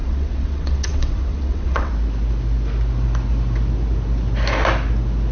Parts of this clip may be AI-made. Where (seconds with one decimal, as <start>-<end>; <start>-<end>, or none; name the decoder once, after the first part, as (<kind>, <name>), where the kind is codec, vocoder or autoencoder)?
0.0-1.9 (vocoder, WaveNeXt)